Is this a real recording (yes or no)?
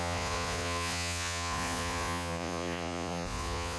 no